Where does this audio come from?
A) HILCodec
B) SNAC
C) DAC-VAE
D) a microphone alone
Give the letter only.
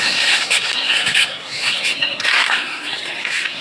B